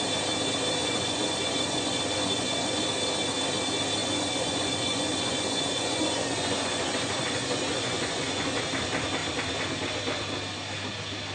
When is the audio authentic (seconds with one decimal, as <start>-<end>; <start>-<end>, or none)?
0.0-0.8; 2.8-4.0; 8.6-11.3